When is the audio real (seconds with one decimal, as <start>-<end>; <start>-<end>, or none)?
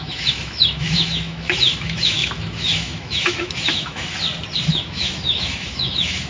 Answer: 4.1-4.7